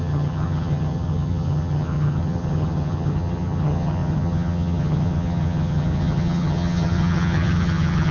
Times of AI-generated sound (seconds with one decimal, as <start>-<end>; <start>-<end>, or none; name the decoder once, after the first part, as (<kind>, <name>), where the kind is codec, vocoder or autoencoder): 0.0-8.1 (vocoder, HiFi-GAN)